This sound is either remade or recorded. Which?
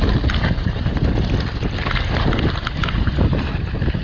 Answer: recorded